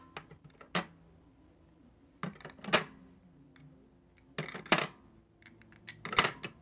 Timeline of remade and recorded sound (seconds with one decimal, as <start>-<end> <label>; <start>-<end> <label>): 0.0-6.6 recorded